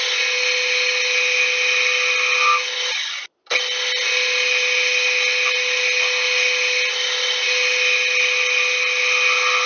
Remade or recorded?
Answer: recorded